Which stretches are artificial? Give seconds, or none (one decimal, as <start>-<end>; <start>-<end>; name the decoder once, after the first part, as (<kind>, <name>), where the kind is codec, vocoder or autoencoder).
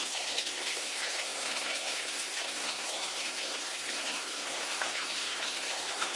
0.0-6.2 (codec, SNAC)